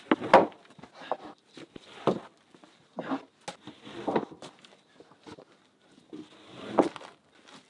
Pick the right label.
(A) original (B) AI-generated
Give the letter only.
A